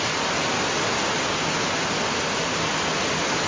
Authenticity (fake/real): real